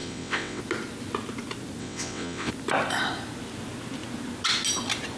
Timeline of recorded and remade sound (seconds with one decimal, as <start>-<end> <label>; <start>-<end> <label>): 0.0-0.6 remade; 0.6-1.8 recorded; 1.8-2.5 remade; 2.5-5.2 recorded